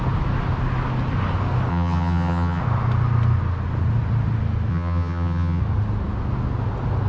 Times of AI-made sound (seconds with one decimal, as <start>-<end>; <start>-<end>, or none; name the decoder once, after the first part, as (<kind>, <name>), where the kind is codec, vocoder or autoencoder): 1.7-2.6 (vocoder, HiFi-GAN); 4.7-5.6